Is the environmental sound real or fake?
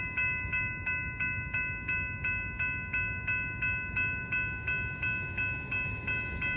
real